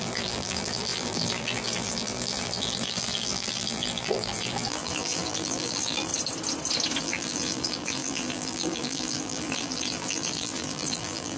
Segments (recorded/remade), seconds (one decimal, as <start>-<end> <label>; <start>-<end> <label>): 0.0-6.1 remade; 6.1-7.0 recorded; 7.0-11.4 remade